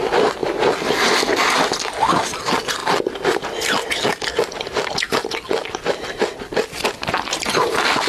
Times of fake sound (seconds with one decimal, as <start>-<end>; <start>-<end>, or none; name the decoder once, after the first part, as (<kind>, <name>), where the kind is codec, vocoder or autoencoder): none